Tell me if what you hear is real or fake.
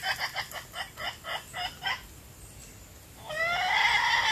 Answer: real